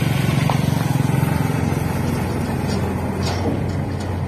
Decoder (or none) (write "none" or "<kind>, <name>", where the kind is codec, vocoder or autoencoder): none